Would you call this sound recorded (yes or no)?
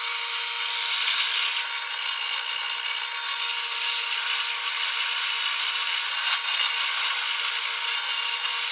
yes